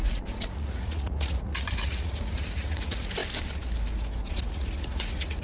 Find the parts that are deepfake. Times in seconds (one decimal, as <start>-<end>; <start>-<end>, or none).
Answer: 0.0-3.2; 4.3-5.4